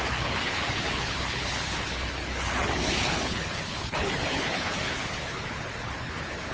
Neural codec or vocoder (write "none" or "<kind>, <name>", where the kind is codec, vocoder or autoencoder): codec, HILCodec